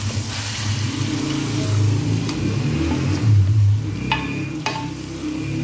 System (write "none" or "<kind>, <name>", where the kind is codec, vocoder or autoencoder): none